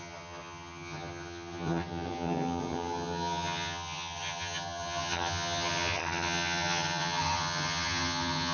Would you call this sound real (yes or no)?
no